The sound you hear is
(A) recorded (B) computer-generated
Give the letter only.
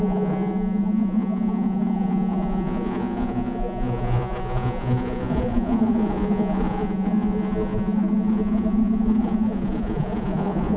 B